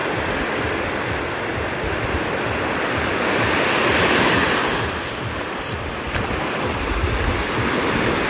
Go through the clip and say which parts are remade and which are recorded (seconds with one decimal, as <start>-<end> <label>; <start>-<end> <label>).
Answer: 0.0-8.3 recorded